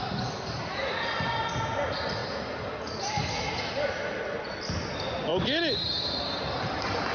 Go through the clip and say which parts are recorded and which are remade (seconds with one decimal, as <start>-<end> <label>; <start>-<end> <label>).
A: 0.0-7.1 recorded